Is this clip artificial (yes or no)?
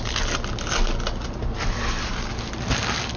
no